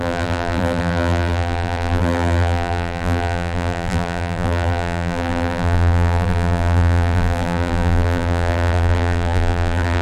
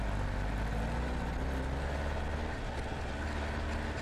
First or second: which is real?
second